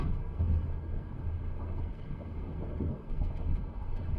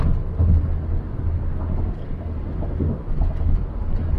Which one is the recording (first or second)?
second